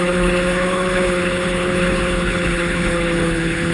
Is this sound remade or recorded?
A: remade